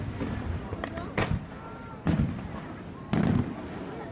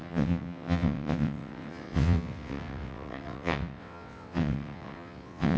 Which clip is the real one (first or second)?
first